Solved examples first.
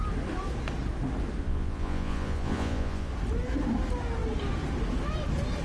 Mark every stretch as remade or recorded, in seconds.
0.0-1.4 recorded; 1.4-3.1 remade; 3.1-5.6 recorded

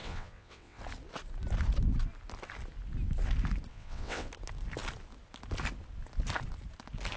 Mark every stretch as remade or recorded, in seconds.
0.0-0.8 remade; 0.8-3.7 recorded; 3.7-4.3 remade; 4.3-7.2 recorded

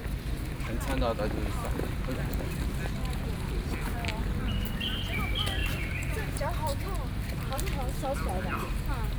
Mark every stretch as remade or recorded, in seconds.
0.0-9.2 recorded

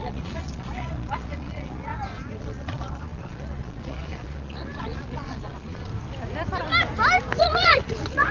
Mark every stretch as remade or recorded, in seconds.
0.0-1.9 remade; 1.9-2.4 recorded; 2.4-5.9 remade; 5.9-7.4 recorded; 7.4-8.3 remade

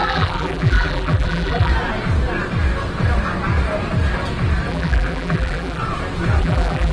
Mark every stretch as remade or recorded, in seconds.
0.0-1.7 remade; 1.7-4.7 recorded; 4.7-5.8 remade; 5.8-6.4 recorded; 6.4-6.9 remade